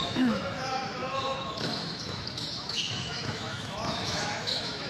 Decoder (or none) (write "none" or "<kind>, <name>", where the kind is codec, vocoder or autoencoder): autoencoder, DAC-VAE